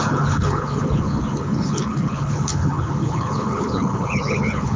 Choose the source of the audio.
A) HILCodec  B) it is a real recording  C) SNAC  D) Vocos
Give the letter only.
A